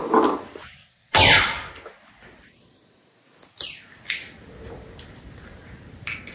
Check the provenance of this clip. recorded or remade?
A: recorded